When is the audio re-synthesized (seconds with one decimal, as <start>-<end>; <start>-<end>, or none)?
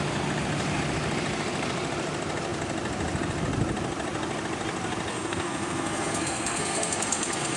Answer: 5.1-7.6